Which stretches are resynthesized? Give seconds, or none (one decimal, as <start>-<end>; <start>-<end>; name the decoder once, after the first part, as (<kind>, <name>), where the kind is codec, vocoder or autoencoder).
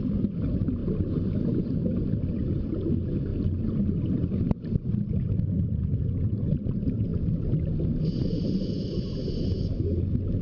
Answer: none